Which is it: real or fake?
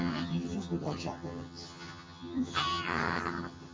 fake